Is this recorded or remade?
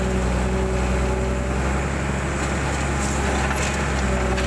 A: recorded